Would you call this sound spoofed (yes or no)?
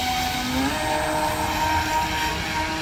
no